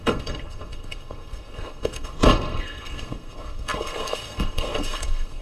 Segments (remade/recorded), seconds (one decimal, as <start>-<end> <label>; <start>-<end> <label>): 0.0-5.4 remade